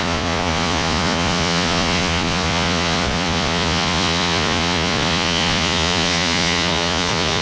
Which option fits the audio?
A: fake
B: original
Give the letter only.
A